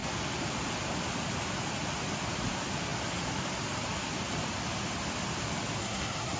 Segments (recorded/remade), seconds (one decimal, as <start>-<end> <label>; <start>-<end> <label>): 0.0-5.8 recorded; 5.8-6.4 remade